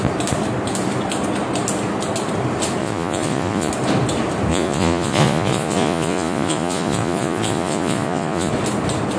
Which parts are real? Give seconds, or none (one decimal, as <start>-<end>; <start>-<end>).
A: 0.0-2.8; 3.7-4.5; 8.5-9.2